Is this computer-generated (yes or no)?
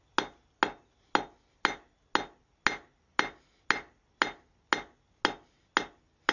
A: no